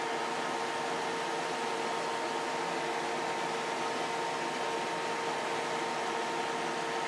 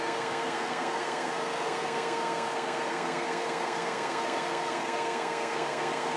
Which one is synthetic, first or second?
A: second